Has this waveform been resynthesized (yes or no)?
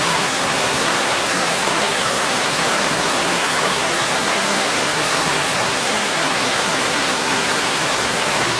yes